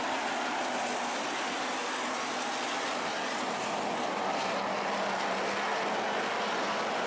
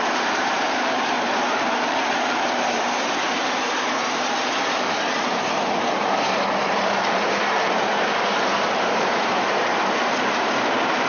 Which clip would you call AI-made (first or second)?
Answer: second